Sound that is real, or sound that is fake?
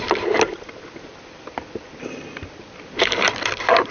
real